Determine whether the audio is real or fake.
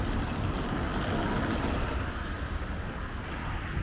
real